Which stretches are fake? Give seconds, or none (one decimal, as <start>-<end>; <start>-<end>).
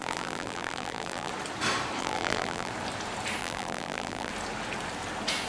0.0-1.3; 2.0-2.7; 3.4-4.3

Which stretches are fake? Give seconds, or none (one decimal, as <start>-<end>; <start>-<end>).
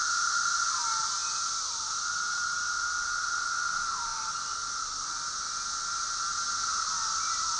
none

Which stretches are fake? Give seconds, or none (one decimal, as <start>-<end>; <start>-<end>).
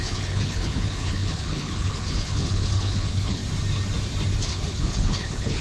0.0-3.4; 4.4-5.6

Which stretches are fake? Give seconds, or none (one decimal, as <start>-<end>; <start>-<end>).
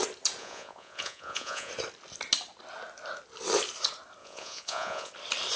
0.4-1.7; 4.2-5.1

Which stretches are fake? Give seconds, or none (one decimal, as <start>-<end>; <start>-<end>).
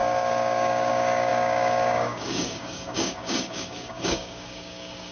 0.0-5.1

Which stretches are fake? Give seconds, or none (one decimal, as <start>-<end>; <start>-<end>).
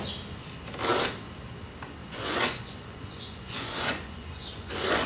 2.0-5.1